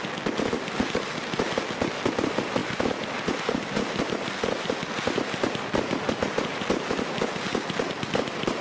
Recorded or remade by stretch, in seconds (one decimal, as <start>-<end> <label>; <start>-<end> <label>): 0.0-8.6 recorded